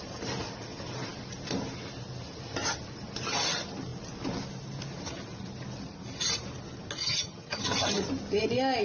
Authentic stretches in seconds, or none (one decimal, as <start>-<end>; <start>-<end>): 0.0-7.0; 7.6-8.8